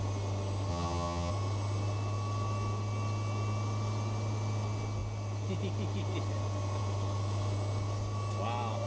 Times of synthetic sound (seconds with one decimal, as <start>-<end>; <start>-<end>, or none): 0.7-1.3